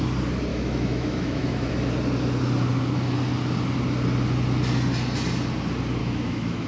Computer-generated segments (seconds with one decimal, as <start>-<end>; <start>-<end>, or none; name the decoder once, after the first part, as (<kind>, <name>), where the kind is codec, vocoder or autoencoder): 0.5-1.7 (autoencoder, DAC-VAE); 6.0-6.7